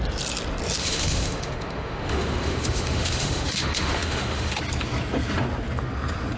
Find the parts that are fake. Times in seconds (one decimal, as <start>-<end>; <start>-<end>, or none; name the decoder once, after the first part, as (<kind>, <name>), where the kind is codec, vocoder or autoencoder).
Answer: 0.8-4.6 (autoencoder, DAC-VAE)